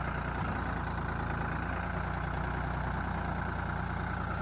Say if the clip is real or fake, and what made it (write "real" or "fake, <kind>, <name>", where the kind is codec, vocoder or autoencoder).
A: real